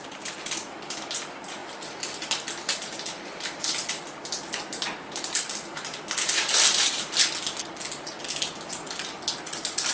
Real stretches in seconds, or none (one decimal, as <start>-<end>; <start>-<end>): 0.0-9.9